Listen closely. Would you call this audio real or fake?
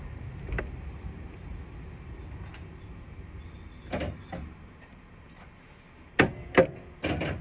real